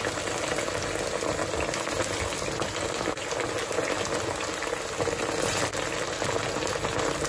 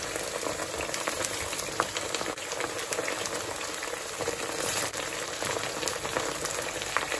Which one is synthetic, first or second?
second